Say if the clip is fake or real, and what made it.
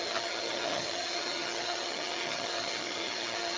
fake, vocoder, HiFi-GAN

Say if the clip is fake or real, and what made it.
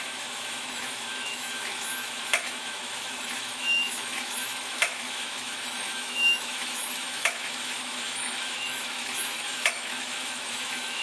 fake, autoencoder, DAC-VAE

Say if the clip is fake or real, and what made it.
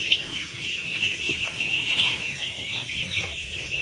fake, codec, SNAC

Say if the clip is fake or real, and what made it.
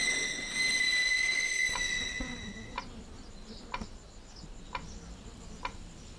real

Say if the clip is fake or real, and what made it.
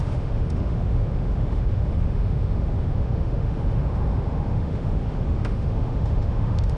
fake, autoencoder, DAC-VAE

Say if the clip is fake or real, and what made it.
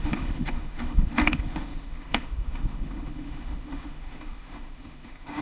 fake, autoencoder, DAC-VAE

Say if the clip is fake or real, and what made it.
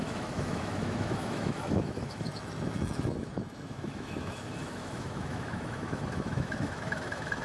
fake, autoencoder, DAC-VAE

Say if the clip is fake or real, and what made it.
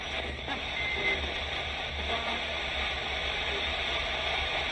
real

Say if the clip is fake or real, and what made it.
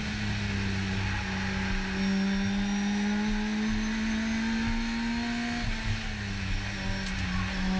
real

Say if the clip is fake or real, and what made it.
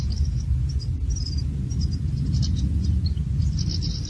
real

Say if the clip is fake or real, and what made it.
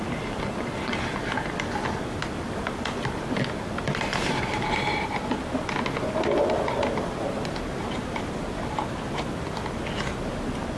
real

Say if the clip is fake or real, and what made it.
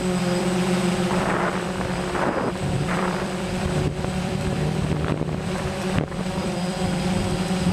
fake, vocoder, BigVGAN v2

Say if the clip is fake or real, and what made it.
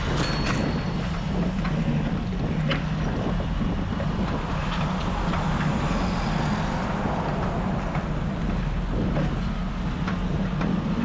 real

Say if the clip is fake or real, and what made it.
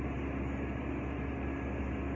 real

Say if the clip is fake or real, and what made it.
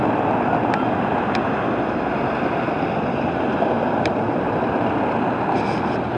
real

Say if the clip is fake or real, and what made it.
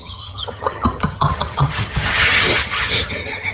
fake, vocoder, HiFi-GAN